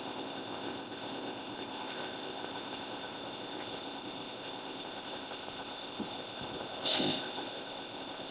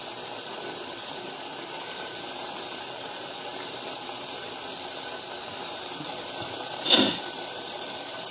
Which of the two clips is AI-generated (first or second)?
first